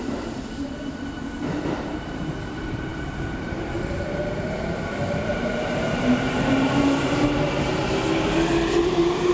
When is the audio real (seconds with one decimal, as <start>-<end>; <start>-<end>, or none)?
7.8-8.8